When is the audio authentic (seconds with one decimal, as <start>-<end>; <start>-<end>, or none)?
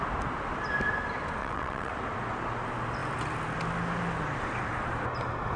0.0-1.4; 1.9-5.6